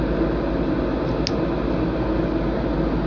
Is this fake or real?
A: real